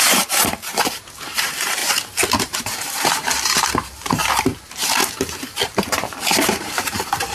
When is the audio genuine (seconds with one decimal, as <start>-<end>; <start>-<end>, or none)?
1.8-2.4; 5.0-5.6

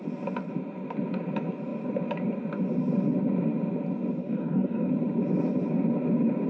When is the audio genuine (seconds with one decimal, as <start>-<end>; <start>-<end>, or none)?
0.0-4.2; 4.9-6.5

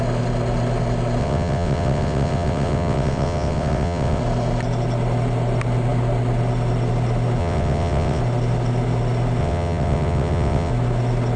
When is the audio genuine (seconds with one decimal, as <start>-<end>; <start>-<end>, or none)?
0.0-1.2; 4.2-7.4; 8.2-9.4; 10.7-11.4

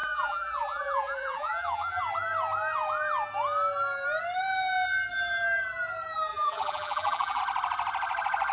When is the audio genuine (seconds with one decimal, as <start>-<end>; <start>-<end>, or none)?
2.0-6.3; 7.4-8.5

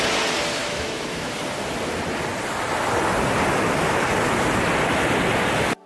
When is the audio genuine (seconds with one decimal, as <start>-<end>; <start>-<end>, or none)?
0.0-0.6; 1.3-5.9

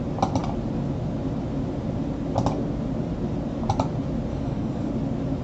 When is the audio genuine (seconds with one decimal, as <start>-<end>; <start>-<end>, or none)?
0.0-4.3; 4.9-5.4

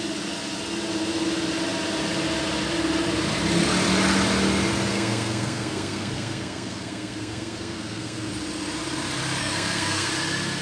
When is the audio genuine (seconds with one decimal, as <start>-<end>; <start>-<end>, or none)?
0.0-4.9; 8.3-9.4; 10.1-10.6